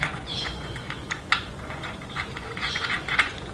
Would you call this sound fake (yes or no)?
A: yes